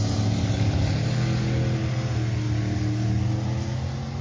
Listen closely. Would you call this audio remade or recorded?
recorded